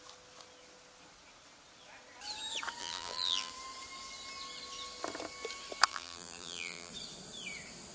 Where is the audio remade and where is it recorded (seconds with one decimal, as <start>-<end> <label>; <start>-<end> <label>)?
0.0-2.8 recorded; 2.8-3.5 remade; 3.5-5.9 recorded; 5.9-6.9 remade; 6.9-7.9 recorded